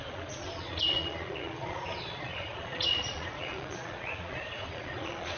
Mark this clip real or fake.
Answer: fake